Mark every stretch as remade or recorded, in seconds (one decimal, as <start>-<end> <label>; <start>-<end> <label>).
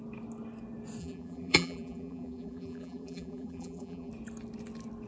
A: 0.0-1.0 recorded; 1.0-4.1 remade; 4.1-5.1 recorded